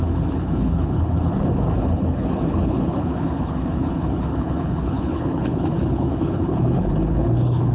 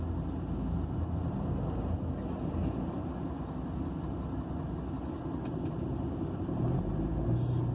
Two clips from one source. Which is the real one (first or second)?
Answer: second